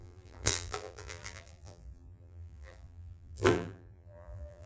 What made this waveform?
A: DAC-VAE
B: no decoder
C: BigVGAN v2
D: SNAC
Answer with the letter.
C